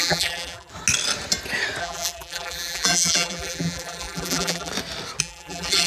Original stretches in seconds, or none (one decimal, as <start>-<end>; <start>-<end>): 0.7-1.8; 4.7-5.2